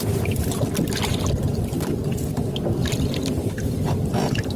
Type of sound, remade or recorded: recorded